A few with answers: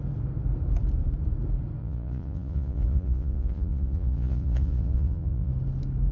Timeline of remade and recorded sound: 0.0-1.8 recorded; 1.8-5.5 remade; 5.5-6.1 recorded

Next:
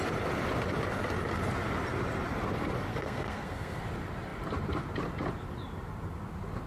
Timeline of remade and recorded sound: 0.0-2.9 recorded; 2.9-3.8 remade; 3.8-6.7 recorded